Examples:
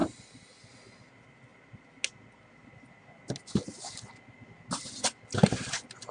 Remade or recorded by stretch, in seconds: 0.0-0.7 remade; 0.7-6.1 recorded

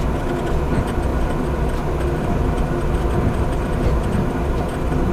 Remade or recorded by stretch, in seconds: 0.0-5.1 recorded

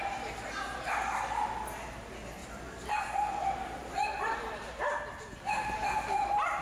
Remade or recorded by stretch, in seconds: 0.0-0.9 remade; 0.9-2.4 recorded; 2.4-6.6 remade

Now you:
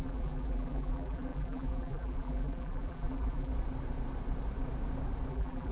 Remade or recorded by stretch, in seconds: 0.0-3.5 remade; 3.5-5.3 recorded; 5.3-5.7 remade